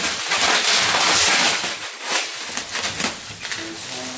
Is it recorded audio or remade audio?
recorded